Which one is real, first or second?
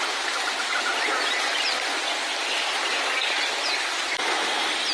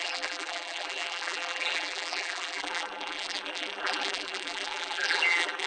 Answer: first